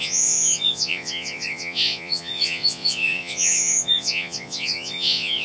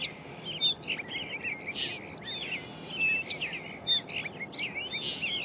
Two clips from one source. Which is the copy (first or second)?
first